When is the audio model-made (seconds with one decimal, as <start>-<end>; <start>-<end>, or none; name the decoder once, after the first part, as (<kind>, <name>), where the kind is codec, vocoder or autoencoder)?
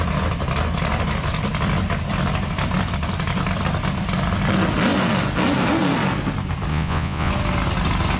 6.7-7.3 (vocoder, Vocos)